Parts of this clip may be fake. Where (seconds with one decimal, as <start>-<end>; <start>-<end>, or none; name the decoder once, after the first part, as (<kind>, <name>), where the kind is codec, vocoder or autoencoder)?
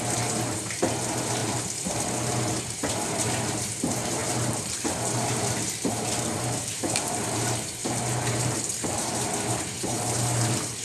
0.0-10.8 (vocoder, BigVGAN v2)